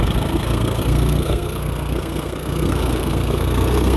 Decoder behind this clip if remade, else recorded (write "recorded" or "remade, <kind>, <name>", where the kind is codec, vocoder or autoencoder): remade, codec, SNAC